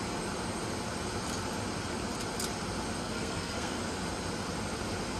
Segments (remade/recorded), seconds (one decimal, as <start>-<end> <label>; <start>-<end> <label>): 0.0-3.0 recorded; 3.0-3.8 remade; 3.8-5.2 recorded